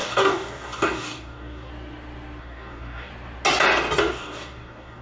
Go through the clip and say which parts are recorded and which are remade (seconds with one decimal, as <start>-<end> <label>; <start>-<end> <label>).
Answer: 0.0-1.7 remade; 1.7-2.4 recorded; 2.4-3.1 remade; 3.1-4.0 recorded; 4.0-5.0 remade

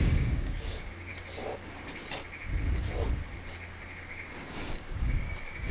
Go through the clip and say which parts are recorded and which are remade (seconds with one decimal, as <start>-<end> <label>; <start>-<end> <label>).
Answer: 0.0-1.1 remade; 1.1-3.8 recorded; 3.8-5.7 remade

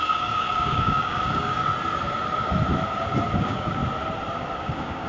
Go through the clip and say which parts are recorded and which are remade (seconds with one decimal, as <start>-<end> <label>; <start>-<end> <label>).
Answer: 0.0-1.7 remade; 1.7-3.4 recorded; 3.4-3.8 remade; 3.8-4.6 recorded; 4.6-5.1 remade

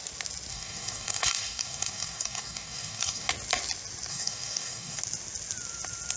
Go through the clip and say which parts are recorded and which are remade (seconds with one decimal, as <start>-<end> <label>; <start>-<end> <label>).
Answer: 0.0-0.5 recorded; 0.5-3.3 remade; 3.3-4.1 recorded; 4.1-5.0 remade; 5.0-6.2 recorded

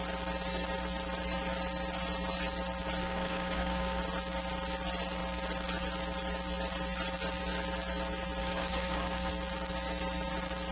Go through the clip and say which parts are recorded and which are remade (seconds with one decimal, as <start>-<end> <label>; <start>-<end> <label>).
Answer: 0.0-3.0 recorded; 3.0-4.0 remade; 4.0-8.4 recorded; 8.4-9.3 remade; 9.3-10.7 recorded

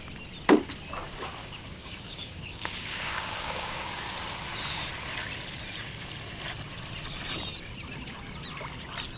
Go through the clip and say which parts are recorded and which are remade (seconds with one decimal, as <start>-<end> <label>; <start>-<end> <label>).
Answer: 0.0-1.4 recorded; 1.4-4.0 remade; 4.0-9.2 recorded